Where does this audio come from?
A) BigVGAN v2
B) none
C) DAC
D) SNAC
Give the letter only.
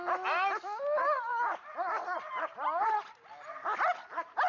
B